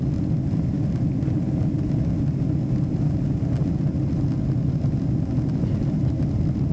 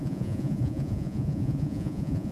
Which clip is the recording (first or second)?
first